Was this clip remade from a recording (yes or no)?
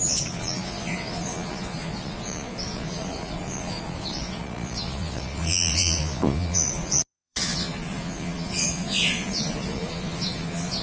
yes